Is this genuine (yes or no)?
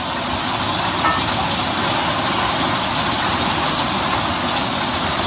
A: yes